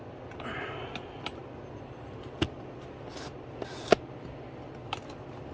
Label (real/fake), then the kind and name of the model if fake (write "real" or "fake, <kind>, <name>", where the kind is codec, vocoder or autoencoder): real